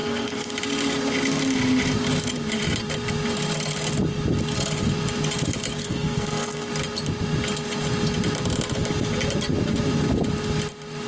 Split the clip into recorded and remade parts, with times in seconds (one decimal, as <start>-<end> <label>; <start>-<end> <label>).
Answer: 0.0-0.5 remade; 0.5-5.8 recorded; 5.8-6.7 remade; 6.7-11.1 recorded

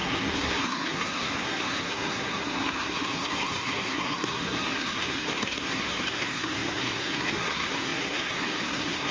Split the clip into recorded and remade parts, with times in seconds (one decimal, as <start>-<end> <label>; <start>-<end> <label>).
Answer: 0.0-9.1 remade